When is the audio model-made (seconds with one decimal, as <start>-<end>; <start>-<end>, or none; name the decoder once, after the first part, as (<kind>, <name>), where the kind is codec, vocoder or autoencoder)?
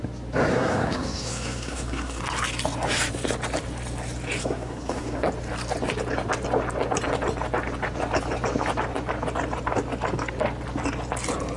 0.5-2.2 (codec, SNAC); 4.4-5.3